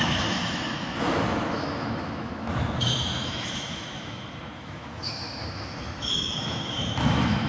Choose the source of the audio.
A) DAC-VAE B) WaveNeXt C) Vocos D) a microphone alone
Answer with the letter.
A